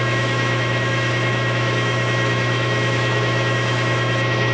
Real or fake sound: fake